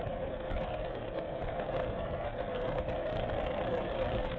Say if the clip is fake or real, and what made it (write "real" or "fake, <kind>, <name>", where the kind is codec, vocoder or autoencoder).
fake, codec, SNAC